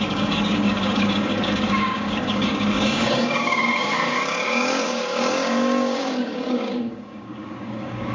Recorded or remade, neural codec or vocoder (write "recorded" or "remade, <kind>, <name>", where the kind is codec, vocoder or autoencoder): remade, codec, DAC